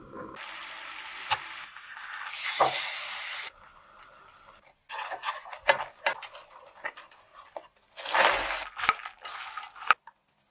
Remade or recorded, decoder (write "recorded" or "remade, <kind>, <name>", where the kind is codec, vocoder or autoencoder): recorded